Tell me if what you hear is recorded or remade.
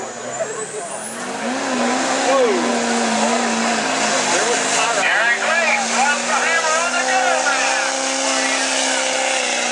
recorded